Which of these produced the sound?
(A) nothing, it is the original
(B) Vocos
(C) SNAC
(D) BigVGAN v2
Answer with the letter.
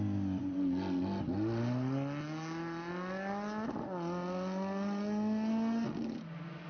A